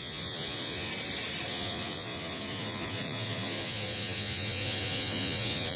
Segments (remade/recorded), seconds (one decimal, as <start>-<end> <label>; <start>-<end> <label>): 0.0-0.9 remade; 0.9-1.5 recorded; 1.5-5.8 remade